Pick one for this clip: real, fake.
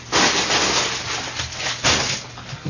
real